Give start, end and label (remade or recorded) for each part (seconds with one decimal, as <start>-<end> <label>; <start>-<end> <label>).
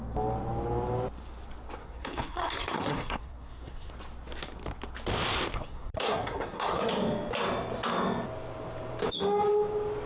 0.0-1.8 recorded; 1.8-3.9 remade; 3.9-5.5 recorded; 5.5-6.9 remade; 6.9-10.1 recorded